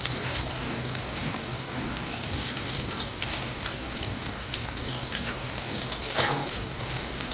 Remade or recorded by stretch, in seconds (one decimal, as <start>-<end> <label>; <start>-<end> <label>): 0.0-7.3 remade